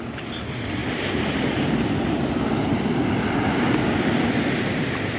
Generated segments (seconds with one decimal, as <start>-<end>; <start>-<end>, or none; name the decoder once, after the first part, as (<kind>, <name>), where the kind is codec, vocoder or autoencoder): none

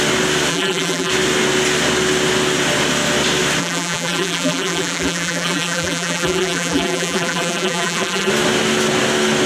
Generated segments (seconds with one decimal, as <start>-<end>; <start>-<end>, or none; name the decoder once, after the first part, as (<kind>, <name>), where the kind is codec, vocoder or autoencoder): 0.5-1.1 (vocoder, BigVGAN v2); 3.6-8.3

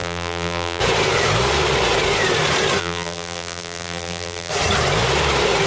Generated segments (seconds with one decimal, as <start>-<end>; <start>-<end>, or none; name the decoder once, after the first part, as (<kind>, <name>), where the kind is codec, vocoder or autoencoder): 0.0-0.8 (vocoder, BigVGAN v2); 2.8-4.5

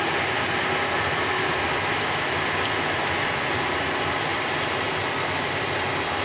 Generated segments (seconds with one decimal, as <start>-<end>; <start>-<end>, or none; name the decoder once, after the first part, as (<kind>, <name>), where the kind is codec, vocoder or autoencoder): 4.3-5.1 (vocoder, BigVGAN v2)

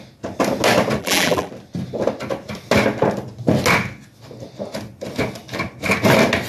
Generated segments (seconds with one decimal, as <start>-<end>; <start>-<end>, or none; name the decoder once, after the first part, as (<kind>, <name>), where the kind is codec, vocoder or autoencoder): 1.0-1.5 (vocoder, BigVGAN v2)

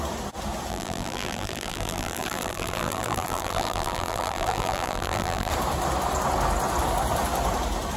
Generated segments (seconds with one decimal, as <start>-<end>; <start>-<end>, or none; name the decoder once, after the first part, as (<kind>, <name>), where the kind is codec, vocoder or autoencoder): 0.7-5.5 (vocoder, BigVGAN v2)

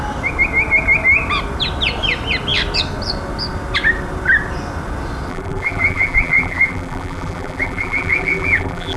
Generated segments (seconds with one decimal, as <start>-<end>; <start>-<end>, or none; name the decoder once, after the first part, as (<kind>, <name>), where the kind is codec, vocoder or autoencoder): 5.3-9.0 (vocoder, BigVGAN v2)